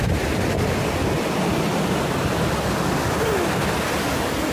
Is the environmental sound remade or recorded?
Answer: recorded